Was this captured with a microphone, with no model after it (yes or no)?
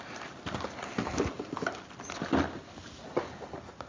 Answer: yes